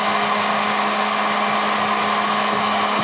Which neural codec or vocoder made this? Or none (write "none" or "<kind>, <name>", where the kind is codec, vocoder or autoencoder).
none